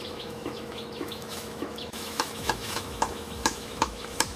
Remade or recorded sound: remade